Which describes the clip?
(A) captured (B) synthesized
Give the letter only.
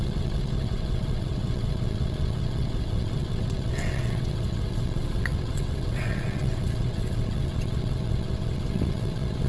B